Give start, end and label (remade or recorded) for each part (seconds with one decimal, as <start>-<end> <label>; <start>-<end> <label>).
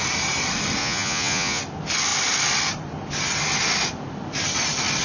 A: 0.0-0.8 recorded; 0.8-1.6 remade; 1.6-5.0 recorded